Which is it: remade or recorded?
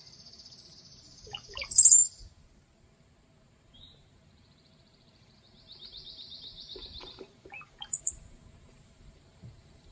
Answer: remade